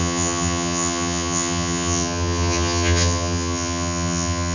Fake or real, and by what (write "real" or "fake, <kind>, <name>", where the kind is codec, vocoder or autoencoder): fake, vocoder, HiFi-GAN